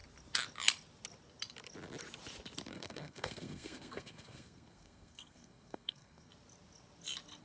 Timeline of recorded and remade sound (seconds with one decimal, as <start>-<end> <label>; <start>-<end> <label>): 0.0-2.7 recorded; 2.7-6.3 remade; 6.3-7.4 recorded